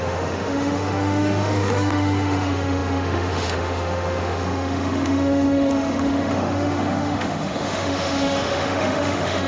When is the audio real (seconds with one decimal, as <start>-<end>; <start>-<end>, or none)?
none